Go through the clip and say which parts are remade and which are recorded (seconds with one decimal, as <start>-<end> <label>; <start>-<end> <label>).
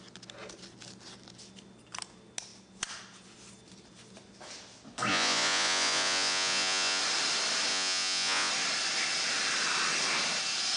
0.0-5.1 recorded; 5.1-7.0 remade; 7.0-7.7 recorded; 7.7-8.5 remade; 8.5-10.8 recorded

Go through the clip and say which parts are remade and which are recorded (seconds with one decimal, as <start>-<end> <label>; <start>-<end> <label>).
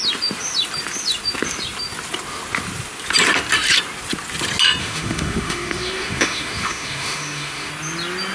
0.0-4.8 recorded; 4.8-7.7 remade; 7.7-8.3 recorded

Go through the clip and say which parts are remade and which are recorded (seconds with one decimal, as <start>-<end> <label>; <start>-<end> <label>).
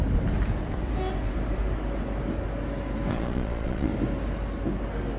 0.0-3.1 recorded; 3.1-3.9 remade; 3.9-5.2 recorded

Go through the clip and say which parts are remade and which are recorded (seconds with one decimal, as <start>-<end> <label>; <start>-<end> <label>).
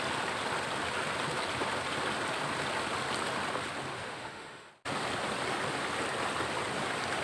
0.0-3.9 recorded; 3.9-4.7 remade; 4.7-7.2 recorded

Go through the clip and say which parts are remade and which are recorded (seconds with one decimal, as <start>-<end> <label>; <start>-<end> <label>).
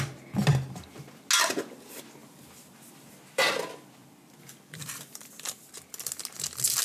0.0-2.2 recorded; 2.2-5.7 remade; 5.7-6.8 recorded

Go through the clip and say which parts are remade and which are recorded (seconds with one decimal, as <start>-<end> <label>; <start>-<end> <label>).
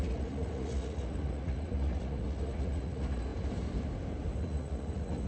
0.0-3.3 remade; 3.3-4.4 recorded; 4.4-5.3 remade